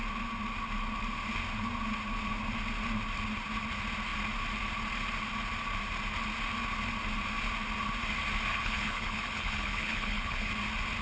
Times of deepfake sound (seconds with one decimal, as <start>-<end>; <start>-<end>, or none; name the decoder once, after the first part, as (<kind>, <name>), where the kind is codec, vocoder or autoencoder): 8.5-10.5 (codec, HILCodec)